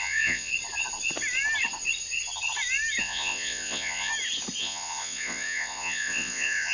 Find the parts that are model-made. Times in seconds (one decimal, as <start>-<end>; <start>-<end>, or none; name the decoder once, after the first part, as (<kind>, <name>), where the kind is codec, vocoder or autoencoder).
0.0-0.5 (vocoder, Vocos); 3.0-4.1; 4.6-6.7

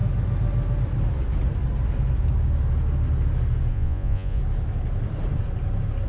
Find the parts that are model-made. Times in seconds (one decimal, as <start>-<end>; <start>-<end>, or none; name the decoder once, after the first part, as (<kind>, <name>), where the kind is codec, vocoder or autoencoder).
3.7-4.4 (vocoder, Vocos)

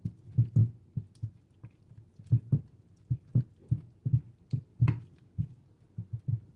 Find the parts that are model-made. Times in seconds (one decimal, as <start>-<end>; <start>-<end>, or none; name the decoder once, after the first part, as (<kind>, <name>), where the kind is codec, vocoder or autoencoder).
none

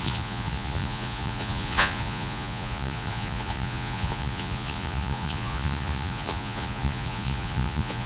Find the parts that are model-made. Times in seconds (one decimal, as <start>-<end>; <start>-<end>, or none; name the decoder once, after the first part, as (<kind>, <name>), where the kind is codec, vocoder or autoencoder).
0.0-8.1 (vocoder, Vocos)

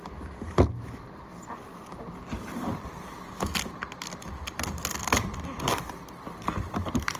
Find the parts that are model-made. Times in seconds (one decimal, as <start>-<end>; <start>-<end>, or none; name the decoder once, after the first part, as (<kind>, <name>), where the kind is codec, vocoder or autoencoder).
none